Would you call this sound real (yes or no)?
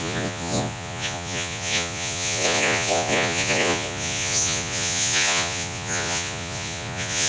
no